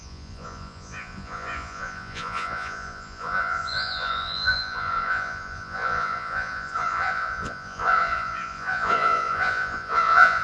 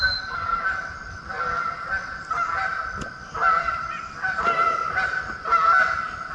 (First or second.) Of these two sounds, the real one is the second